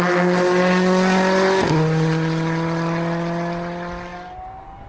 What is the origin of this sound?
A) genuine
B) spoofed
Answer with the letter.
A